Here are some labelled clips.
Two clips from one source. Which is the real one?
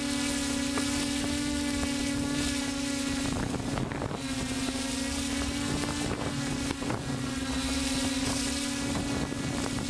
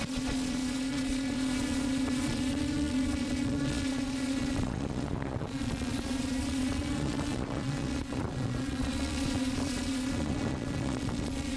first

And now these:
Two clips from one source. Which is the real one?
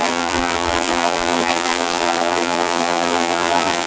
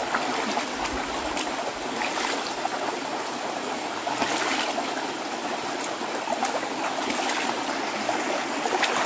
second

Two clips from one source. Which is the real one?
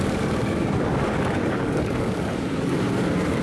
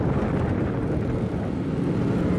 second